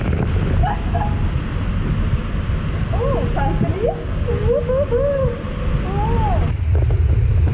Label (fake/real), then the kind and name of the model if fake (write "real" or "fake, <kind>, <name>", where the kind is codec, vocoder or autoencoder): real